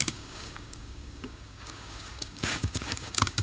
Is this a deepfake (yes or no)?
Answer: yes